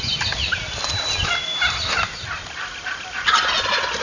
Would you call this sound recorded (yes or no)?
yes